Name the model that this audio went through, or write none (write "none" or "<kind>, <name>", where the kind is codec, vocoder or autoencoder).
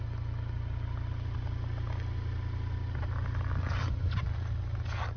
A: none